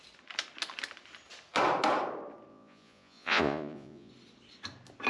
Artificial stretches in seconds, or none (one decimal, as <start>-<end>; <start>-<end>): 2.5-4.1